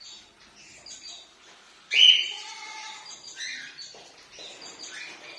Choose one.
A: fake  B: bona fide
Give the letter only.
B